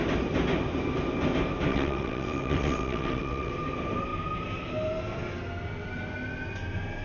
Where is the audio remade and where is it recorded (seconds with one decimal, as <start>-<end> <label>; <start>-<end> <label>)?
0.0-1.7 recorded; 1.7-3.5 remade; 3.5-7.0 recorded